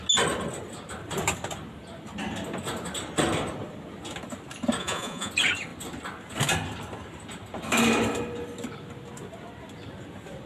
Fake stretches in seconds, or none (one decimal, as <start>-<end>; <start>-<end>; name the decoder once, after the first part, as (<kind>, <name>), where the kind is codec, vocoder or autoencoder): 4.8-5.3 (vocoder, Vocos)